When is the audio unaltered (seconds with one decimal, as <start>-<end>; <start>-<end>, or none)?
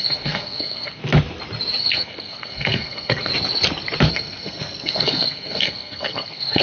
1.0-1.8; 3.3-4.1